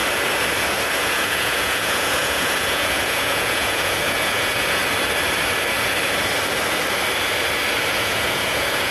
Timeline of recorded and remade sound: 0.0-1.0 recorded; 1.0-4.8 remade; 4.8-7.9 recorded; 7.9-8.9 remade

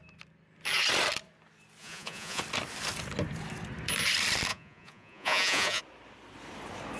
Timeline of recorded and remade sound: 0.0-1.8 recorded; 1.8-2.4 remade; 2.4-4.5 recorded; 4.5-5.8 remade; 5.8-7.0 recorded